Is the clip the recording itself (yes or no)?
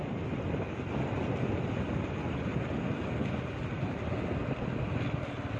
yes